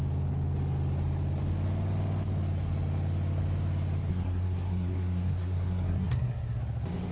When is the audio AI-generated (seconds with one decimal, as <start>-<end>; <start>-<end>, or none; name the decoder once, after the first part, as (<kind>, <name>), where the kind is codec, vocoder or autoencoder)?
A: 4.1-6.6 (codec, SNAC)